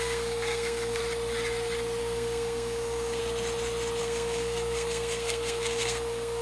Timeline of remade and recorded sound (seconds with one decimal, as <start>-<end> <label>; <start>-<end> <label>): 0.0-1.0 remade; 1.0-2.0 recorded; 2.0-3.2 remade; 3.2-4.0 recorded; 4.0-6.4 remade